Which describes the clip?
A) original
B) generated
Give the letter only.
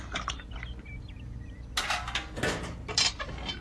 A